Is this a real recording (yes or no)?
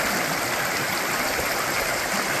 yes